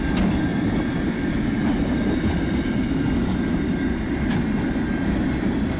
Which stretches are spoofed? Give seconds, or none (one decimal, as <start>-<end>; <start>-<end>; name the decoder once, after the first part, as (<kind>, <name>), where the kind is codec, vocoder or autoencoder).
none